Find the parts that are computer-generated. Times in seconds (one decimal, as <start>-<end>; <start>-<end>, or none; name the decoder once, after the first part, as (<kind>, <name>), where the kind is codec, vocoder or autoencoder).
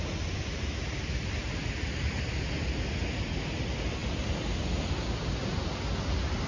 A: none